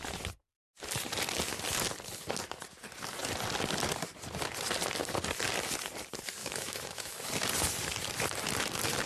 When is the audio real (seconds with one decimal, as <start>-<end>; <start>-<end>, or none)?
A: 0.0-6.4; 7.3-9.1